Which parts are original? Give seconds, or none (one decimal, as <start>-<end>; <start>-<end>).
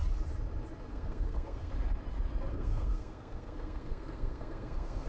0.0-0.9; 1.7-2.5